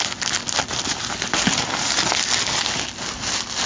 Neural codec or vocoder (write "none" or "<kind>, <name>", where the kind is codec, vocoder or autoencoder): none